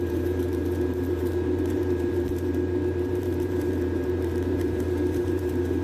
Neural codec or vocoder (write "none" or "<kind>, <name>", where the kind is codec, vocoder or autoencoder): vocoder, BigVGAN v2